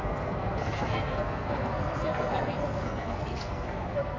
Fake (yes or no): yes